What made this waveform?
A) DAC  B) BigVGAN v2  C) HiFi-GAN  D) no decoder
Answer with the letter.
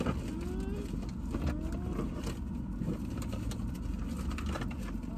D